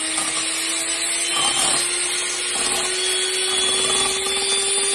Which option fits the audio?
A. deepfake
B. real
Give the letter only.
B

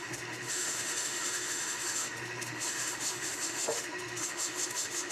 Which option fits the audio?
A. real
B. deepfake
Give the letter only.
B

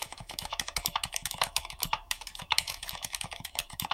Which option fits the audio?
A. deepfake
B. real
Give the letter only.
A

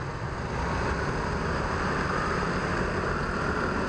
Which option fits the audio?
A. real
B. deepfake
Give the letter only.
A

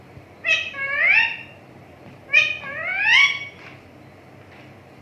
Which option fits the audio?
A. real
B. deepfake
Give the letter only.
A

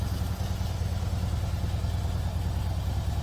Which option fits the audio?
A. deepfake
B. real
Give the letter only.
B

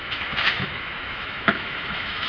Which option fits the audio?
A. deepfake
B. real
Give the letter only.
A